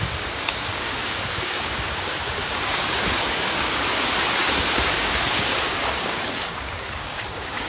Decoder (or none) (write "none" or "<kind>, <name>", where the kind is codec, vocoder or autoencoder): codec, DAC